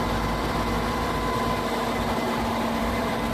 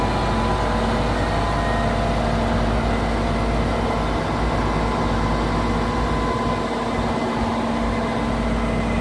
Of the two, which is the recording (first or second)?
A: second